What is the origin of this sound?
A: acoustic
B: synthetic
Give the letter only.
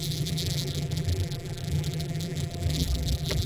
B